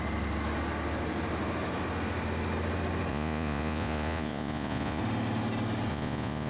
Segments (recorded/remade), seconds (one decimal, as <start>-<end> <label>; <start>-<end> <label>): 0.0-3.1 recorded; 3.1-5.0 remade; 5.0-5.9 recorded; 5.9-6.5 remade